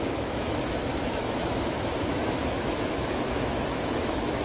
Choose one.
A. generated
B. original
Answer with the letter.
A